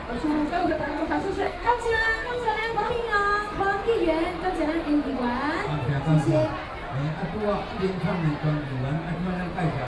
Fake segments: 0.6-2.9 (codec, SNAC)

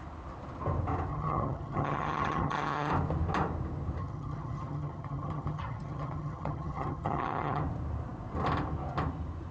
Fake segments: 1.1-2.9 (vocoder, HiFi-GAN); 4.0-7.6

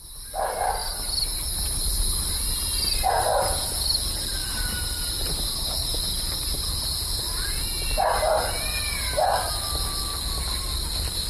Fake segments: none